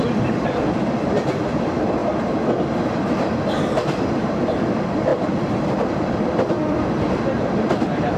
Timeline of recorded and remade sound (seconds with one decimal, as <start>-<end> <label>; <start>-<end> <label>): 0.0-2.0 remade; 2.0-2.7 recorded; 2.7-5.1 remade; 5.1-5.6 recorded; 5.6-8.2 remade

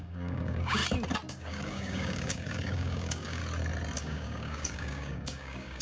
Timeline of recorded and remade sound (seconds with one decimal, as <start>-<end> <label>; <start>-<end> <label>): 0.0-0.8 remade; 0.8-1.3 recorded; 1.3-3.4 remade; 3.4-4.0 recorded; 4.0-5.8 remade